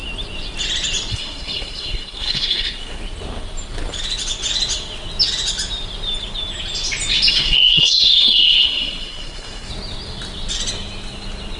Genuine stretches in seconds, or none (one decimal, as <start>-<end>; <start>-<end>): 0.0-1.1; 3.0-7.3; 9.7-11.6